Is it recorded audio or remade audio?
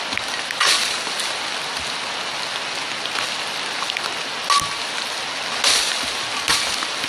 recorded